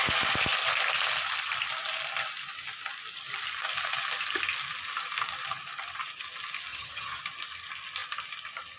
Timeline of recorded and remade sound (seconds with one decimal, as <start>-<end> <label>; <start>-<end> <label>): 0.0-6.7 recorded; 6.7-7.2 remade; 7.2-8.8 recorded